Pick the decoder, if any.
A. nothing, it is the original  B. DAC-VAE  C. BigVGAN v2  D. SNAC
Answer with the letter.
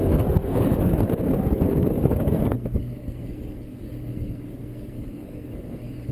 D